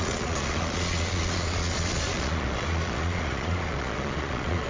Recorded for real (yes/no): no